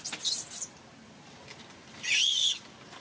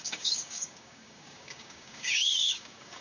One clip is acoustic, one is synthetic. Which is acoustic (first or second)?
first